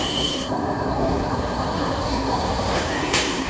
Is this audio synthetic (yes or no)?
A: yes